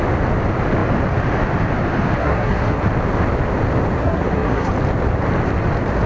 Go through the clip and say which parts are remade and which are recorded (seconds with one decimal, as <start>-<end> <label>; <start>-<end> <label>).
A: 0.0-2.2 recorded; 2.2-2.8 remade; 2.8-4.0 recorded; 4.0-4.7 remade; 4.7-6.1 recorded